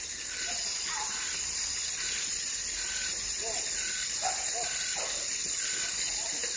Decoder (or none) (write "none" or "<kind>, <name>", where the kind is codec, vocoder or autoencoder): none